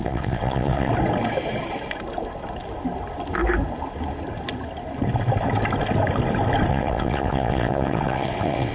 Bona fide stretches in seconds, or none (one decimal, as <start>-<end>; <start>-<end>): 0.9-6.7